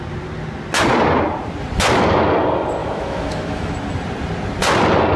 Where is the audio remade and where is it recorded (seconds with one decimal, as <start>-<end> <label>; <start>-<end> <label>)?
0.0-2.8 recorded; 2.8-3.7 remade; 3.7-5.2 recorded